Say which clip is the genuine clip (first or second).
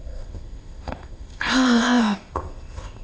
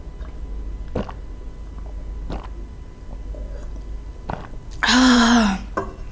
second